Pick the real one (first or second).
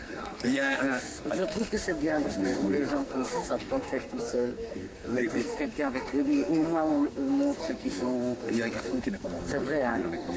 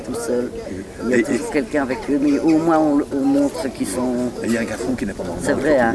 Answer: second